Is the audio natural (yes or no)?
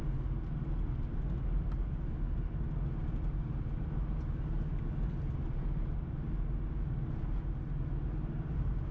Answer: yes